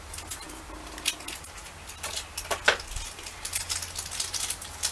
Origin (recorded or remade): recorded